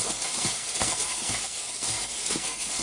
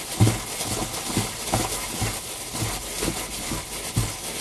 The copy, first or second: first